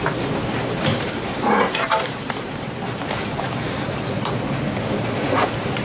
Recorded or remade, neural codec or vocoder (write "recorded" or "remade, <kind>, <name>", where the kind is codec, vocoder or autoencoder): remade, vocoder, BigVGAN v2